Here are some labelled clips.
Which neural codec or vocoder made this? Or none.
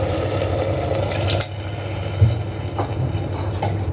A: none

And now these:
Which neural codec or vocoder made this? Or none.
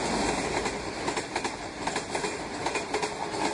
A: none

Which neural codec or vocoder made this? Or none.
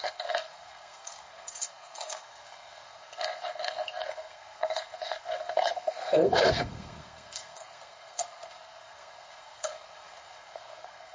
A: codec, SNAC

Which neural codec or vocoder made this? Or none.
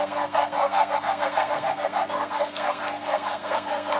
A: codec, SNAC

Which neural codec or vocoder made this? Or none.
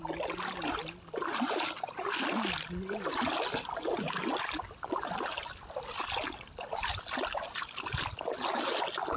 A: none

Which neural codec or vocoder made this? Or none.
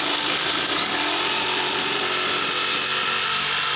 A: none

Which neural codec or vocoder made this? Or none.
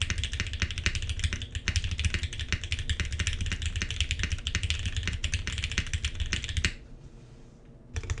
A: none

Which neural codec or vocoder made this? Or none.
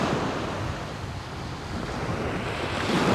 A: none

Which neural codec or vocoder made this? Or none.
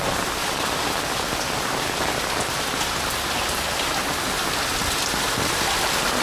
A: none